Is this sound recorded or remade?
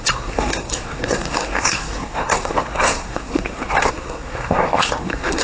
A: remade